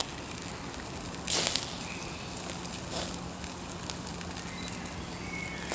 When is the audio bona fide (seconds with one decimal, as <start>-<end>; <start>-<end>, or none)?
0.0-5.7